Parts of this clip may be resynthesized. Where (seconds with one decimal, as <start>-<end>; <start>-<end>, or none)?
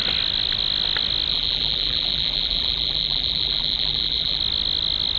1.3-4.4